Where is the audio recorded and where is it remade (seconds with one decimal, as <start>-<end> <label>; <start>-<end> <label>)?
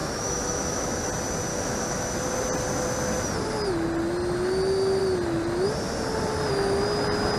0.0-1.1 remade; 1.1-1.5 recorded; 1.5-2.0 remade; 2.0-7.4 recorded